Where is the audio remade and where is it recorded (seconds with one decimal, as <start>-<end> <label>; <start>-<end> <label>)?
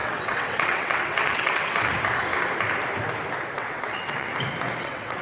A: 0.0-1.9 remade; 1.9-3.5 recorded; 3.5-4.3 remade; 4.3-4.8 recorded; 4.8-5.2 remade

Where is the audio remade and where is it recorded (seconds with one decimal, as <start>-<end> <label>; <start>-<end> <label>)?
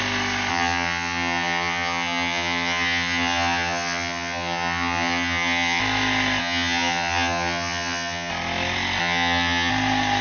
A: 0.0-0.5 recorded; 0.5-5.8 remade; 5.8-6.4 recorded; 6.4-8.3 remade; 8.3-9.0 recorded; 9.0-9.7 remade; 9.7-10.2 recorded